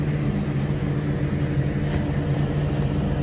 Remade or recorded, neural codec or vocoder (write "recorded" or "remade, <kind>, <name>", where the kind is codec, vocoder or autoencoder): recorded